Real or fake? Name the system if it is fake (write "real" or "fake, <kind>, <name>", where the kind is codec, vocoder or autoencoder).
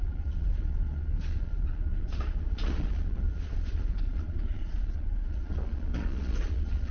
fake, vocoder, Vocos